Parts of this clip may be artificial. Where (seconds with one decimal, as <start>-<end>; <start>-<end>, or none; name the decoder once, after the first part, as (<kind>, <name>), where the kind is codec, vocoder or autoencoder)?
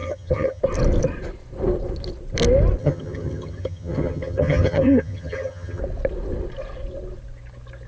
0.0-0.6 (vocoder, HiFi-GAN); 2.8-5.8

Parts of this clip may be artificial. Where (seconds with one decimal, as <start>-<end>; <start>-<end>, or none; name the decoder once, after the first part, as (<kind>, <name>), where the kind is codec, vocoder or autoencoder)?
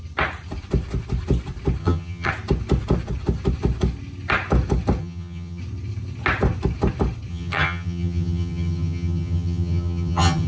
1.8-2.3 (vocoder, HiFi-GAN); 5.0-5.6; 7.3-10.5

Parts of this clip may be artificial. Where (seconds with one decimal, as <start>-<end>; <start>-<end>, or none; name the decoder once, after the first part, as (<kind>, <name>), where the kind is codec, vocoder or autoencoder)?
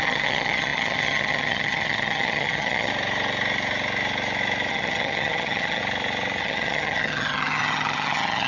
0.0-2.9 (vocoder, HiFi-GAN); 4.7-5.8; 6.4-8.5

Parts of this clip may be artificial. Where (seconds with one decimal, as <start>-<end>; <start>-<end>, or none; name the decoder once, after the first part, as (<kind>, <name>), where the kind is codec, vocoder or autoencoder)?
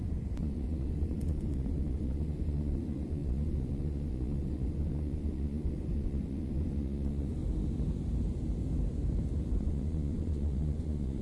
0.0-7.4 (vocoder, Vocos); 9.5-11.2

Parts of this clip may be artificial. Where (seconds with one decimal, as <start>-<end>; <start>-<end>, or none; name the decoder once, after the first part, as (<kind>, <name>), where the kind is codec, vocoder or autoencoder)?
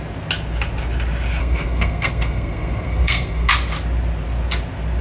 1.4-3.5 (codec, SNAC)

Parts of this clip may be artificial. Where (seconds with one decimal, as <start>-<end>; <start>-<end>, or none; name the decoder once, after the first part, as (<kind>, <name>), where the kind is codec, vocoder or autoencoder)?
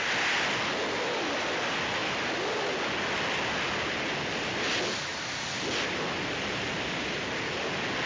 none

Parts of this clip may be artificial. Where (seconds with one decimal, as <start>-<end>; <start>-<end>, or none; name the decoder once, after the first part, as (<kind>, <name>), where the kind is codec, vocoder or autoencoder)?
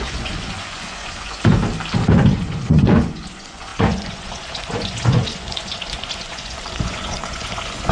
0.0-1.6 (vocoder, Vocos); 2.2-7.9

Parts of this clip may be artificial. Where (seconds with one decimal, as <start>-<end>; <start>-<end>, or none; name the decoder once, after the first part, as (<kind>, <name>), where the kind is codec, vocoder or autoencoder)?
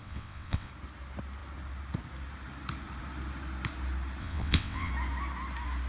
0.0-0.7 (vocoder, WaveNeXt); 4.2-4.9